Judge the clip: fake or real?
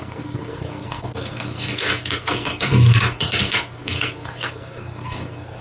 fake